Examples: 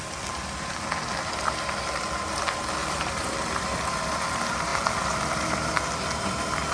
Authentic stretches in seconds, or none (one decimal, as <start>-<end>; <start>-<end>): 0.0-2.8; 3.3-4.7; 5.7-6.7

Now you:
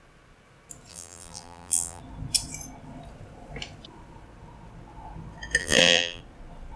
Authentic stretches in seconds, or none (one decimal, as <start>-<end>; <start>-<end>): 0.0-0.9; 2.0-5.6; 6.2-6.8

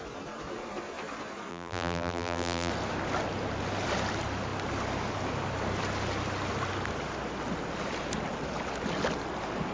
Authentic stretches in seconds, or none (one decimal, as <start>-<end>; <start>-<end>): 0.0-1.5; 2.7-9.7

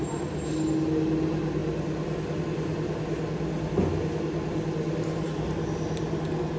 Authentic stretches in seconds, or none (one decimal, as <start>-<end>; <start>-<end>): 0.0-6.6